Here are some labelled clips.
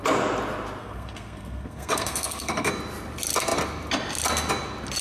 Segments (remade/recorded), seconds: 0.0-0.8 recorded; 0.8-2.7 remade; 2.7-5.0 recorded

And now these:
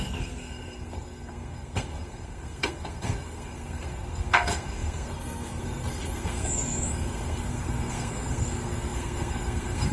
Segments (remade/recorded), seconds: 0.0-9.9 remade

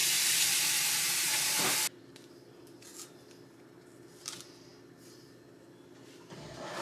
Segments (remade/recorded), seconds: 0.0-6.8 recorded

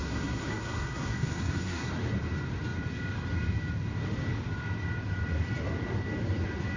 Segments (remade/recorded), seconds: 0.0-1.9 remade; 1.9-6.8 recorded

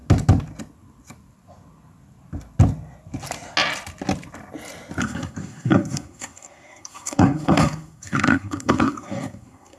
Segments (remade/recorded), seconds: 0.0-5.0 recorded; 5.0-9.8 remade

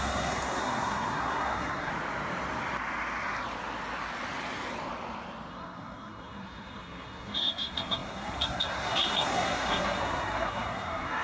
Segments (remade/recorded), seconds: 0.0-1.9 remade; 1.9-5.5 recorded; 5.5-11.2 remade

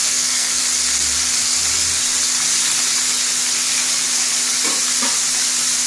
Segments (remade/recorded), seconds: 0.0-0.6 remade; 0.6-5.9 recorded